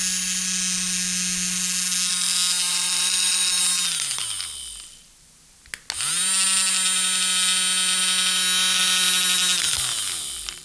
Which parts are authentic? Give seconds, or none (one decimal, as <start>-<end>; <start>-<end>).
0.0-2.7; 3.6-10.6